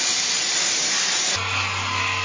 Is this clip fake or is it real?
real